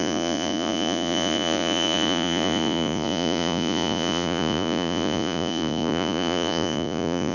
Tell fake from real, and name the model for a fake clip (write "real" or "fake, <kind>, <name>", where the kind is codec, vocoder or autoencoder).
fake, vocoder, Vocos